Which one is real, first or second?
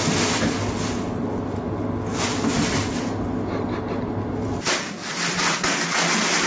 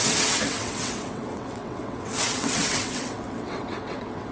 first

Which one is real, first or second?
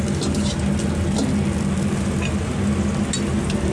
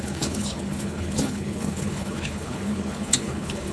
first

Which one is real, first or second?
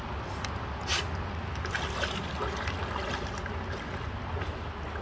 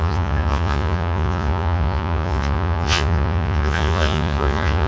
first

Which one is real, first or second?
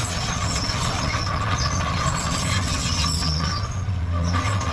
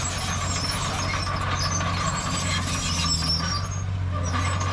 second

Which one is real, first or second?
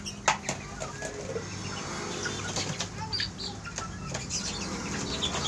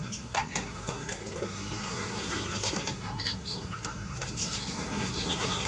first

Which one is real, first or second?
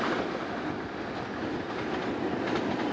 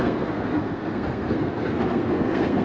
first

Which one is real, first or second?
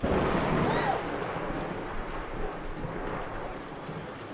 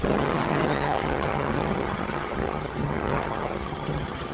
first